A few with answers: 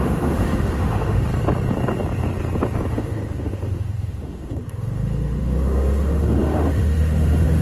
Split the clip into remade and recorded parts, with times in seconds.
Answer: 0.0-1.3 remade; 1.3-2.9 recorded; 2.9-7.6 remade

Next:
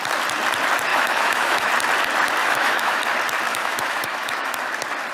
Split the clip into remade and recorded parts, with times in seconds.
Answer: 0.0-0.9 recorded; 0.9-1.7 remade; 1.7-2.4 recorded; 2.4-3.0 remade; 3.0-3.5 recorded; 3.5-4.5 remade; 4.5-5.1 recorded

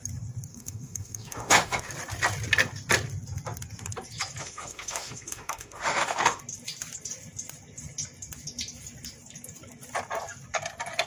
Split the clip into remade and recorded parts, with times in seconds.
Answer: 0.0-0.5 recorded; 0.5-1.9 remade; 1.9-4.4 recorded; 4.4-6.4 remade; 6.4-11.1 recorded

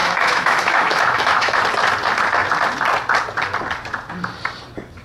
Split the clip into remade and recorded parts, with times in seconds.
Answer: 0.0-1.6 remade; 1.6-5.0 recorded

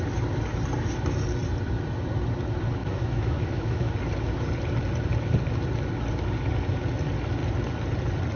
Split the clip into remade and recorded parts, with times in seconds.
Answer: 0.0-2.8 recorded; 2.8-3.9 remade; 3.9-8.4 recorded

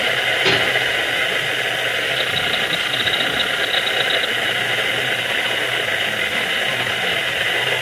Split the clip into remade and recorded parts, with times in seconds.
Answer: 0.0-7.8 recorded

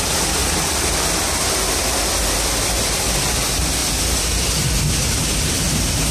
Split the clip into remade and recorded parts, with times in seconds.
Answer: 0.0-6.1 recorded

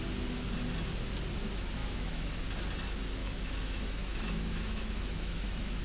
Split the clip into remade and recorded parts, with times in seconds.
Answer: 0.0-1.8 recorded; 1.8-2.4 remade; 2.4-3.2 recorded; 3.2-5.8 remade